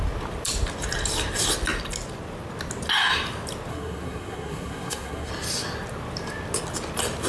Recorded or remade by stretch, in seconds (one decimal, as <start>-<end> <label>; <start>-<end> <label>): 0.0-3.7 recorded; 3.7-5.3 remade; 5.3-7.3 recorded